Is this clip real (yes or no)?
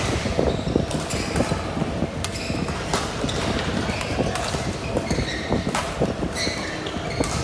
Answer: yes